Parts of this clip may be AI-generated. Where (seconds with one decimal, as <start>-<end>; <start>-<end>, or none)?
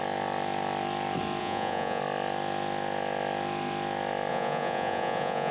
1.4-2.0; 4.3-5.5